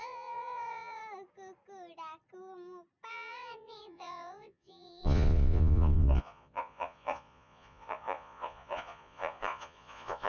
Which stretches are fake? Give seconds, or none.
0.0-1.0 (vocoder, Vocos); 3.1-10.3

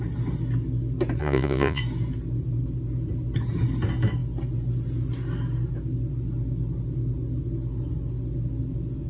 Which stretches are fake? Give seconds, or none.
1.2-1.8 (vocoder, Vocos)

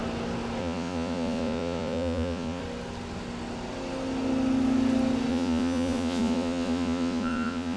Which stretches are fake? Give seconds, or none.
0.6-2.6 (vocoder, Vocos); 5.3-7.8